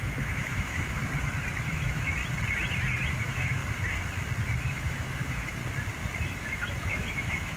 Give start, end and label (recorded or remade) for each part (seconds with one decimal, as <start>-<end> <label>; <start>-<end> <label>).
0.0-1.0 remade; 1.0-1.7 recorded; 1.7-2.2 remade; 2.2-3.2 recorded; 3.2-3.6 remade; 3.6-4.6 recorded; 4.6-5.6 remade; 5.6-6.2 recorded; 6.2-7.6 remade